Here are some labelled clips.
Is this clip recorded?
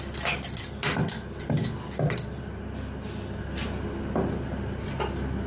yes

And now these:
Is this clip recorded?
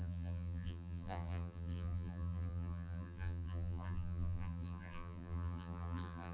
no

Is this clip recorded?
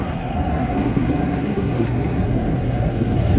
no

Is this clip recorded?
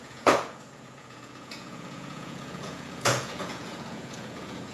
no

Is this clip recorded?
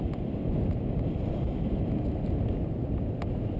yes